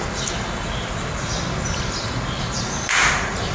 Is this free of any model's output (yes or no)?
yes